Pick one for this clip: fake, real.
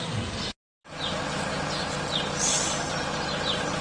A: real